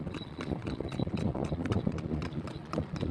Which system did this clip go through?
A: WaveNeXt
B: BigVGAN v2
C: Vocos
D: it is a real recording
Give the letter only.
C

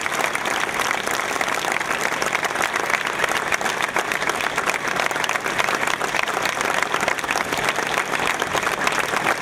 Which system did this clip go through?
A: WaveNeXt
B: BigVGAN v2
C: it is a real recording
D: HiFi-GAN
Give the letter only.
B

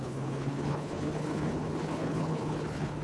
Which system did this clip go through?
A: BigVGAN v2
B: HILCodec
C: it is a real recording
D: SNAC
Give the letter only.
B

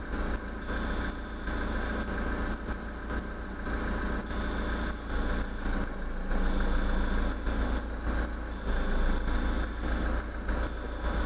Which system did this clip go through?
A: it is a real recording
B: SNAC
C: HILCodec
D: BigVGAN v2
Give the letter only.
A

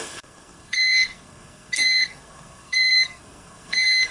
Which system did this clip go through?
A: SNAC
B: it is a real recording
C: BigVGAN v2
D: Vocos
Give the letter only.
A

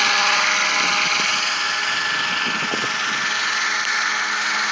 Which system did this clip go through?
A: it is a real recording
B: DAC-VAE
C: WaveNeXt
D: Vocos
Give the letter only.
A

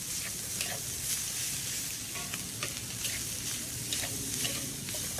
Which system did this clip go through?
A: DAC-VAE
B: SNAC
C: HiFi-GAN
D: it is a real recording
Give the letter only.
D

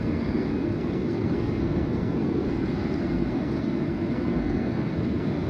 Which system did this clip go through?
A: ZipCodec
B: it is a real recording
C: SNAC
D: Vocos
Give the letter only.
C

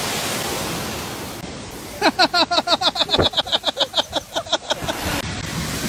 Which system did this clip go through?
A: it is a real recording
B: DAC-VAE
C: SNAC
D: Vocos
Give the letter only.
A